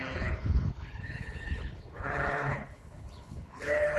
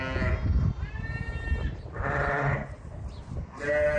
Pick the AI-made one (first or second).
first